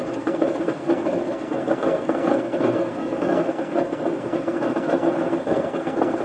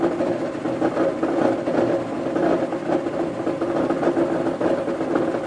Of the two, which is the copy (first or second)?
first